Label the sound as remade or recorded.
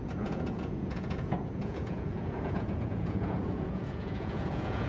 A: remade